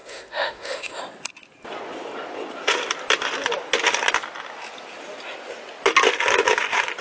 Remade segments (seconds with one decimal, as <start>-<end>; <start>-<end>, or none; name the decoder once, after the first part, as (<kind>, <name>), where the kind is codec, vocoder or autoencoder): 0.0-1.0 (autoencoder, DAC-VAE)